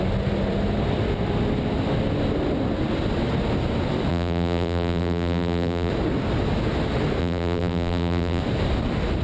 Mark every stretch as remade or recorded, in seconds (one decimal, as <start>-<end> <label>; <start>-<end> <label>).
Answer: 0.0-4.1 recorded; 4.1-5.9 remade; 5.9-7.2 recorded; 7.2-8.4 remade; 8.4-9.2 recorded